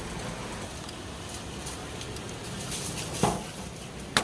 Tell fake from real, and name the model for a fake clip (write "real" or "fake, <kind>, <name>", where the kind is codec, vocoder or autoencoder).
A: real